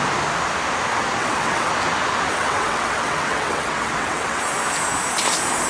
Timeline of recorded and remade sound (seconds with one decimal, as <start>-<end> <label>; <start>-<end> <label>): 0.0-1.2 recorded; 1.2-1.7 remade; 1.7-2.3 recorded; 2.3-4.4 remade; 4.4-5.7 recorded